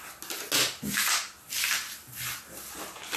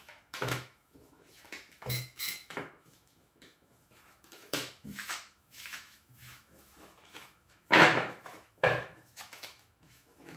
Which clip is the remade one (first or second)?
second